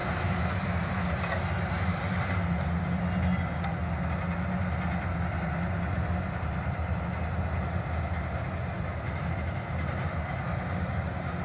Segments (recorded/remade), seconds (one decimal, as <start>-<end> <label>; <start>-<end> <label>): 0.0-11.4 recorded